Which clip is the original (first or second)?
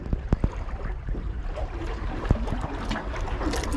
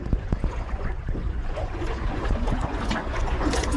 first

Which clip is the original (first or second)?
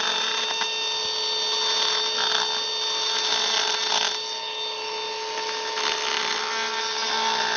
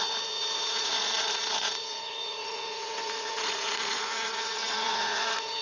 first